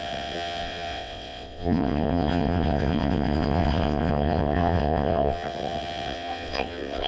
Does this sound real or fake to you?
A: fake